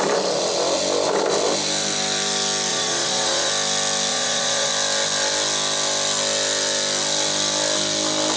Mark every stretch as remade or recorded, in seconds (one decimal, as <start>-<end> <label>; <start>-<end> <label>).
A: 0.0-2.7 recorded; 2.7-3.5 remade; 3.5-4.1 recorded; 4.1-4.7 remade; 4.7-8.4 recorded